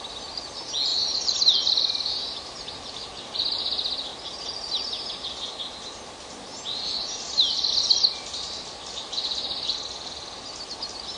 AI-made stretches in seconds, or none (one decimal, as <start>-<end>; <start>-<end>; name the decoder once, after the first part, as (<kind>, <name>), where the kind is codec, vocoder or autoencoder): 0.9-1.8 (vocoder, BigVGAN v2)